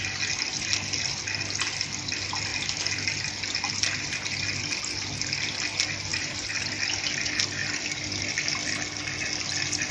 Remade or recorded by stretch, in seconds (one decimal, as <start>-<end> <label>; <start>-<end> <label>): 0.0-6.1 recorded; 6.1-6.7 remade; 6.7-9.9 recorded